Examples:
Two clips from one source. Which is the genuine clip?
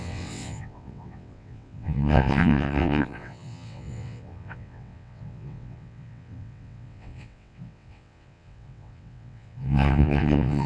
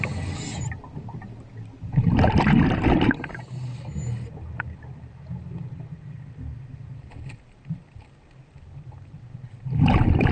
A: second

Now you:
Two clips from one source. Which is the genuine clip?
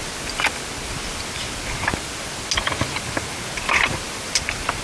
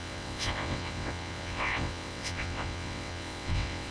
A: first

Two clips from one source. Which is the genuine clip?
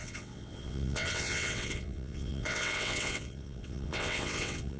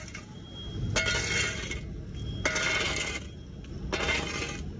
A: second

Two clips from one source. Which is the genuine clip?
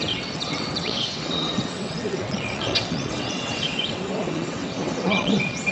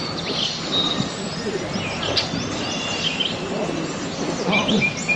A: second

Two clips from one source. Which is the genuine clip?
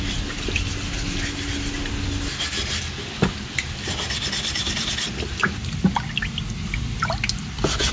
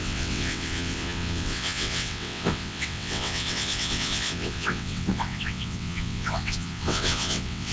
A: first